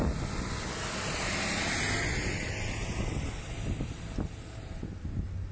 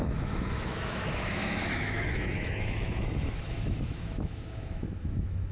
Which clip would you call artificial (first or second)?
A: second